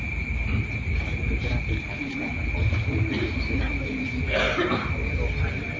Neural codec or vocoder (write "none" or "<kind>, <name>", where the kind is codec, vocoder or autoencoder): none